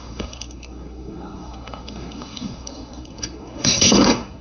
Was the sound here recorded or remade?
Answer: remade